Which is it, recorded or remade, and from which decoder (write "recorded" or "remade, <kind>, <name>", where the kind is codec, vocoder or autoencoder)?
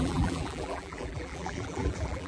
remade, vocoder, BigVGAN v2